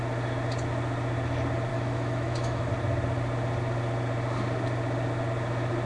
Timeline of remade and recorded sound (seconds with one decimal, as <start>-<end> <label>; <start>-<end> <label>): 0.0-1.7 recorded; 1.7-2.7 remade; 2.7-5.9 recorded